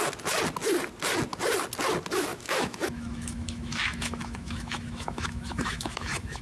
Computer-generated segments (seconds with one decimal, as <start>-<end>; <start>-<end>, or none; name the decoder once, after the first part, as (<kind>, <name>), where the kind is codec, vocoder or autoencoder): 2.3-6.4 (autoencoder, DAC-VAE)

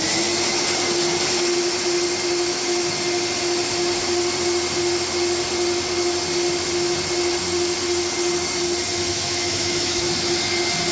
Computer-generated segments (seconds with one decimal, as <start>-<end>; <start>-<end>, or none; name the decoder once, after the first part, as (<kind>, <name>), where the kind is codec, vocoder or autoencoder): 9.1-10.1 (autoencoder, DAC-VAE)

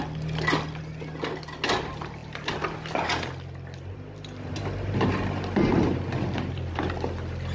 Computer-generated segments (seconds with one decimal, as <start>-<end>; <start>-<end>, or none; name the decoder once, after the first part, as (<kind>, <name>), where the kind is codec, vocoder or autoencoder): none

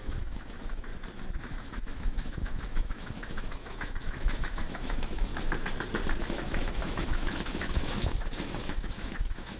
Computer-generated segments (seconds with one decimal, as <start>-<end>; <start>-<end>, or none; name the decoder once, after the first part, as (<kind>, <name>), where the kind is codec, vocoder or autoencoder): 0.0-0.9 (autoencoder, DAC-VAE); 1.4-5.3; 6.2-9.6

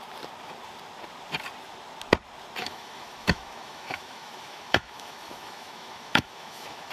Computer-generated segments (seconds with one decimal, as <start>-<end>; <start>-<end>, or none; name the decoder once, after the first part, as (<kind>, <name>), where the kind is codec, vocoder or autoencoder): 2.6-6.9 (autoencoder, DAC-VAE)

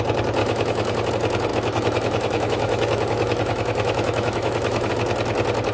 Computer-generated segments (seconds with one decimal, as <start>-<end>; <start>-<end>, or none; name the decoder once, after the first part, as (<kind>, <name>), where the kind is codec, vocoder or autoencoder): 0.4-1.1 (autoencoder, DAC-VAE); 1.5-4.9

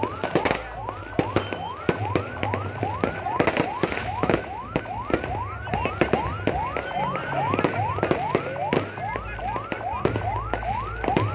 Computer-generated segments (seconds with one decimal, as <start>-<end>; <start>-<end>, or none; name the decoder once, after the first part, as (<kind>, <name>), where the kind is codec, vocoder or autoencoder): 4.0-4.9 (autoencoder, DAC-VAE)